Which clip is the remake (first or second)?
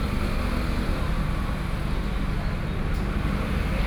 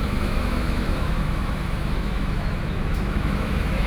second